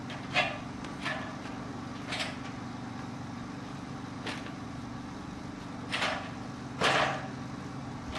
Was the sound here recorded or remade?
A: recorded